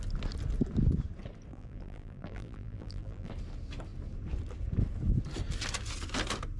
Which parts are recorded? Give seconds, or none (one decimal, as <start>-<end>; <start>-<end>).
0.0-1.5; 3.3-6.6